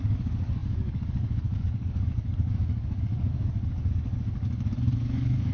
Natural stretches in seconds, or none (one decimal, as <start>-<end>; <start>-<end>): none